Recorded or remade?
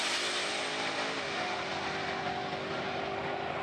recorded